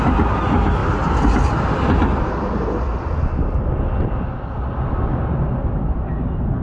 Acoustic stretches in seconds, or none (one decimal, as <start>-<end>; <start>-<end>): 0.0-6.6

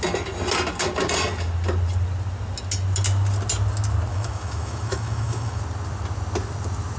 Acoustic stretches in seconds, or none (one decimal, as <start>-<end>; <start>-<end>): 0.0-4.1; 5.6-7.0

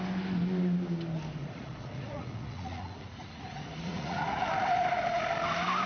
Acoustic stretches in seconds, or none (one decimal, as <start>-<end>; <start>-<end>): 0.0-1.4; 4.5-5.9

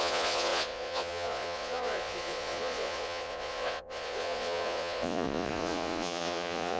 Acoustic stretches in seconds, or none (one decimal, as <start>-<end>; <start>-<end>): none

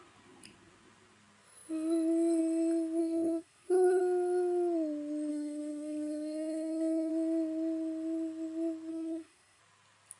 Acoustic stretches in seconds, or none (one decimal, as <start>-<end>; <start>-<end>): 0.0-3.0; 4.0-5.3; 7.1-8.9; 9.6-10.2

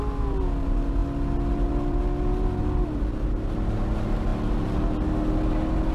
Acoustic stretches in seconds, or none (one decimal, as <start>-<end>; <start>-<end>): 0.0-5.9

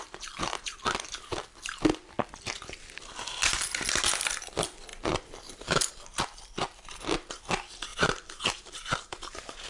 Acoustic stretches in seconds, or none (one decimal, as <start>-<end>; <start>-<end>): 0.0-4.9; 5.9-7.9

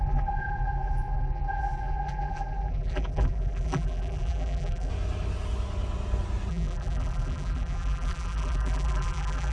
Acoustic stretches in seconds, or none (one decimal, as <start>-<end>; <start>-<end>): 4.9-6.5